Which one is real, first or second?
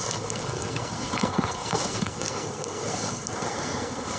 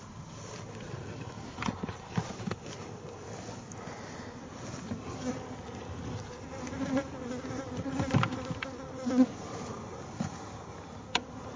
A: second